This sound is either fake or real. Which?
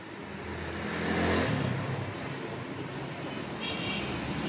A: real